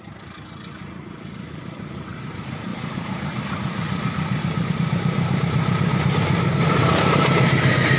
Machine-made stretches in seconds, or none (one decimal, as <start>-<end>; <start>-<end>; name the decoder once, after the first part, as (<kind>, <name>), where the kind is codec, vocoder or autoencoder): 0.0-8.0 (vocoder, BigVGAN v2)